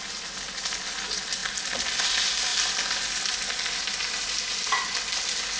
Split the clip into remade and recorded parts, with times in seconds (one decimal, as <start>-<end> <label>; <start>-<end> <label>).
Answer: 0.0-5.6 recorded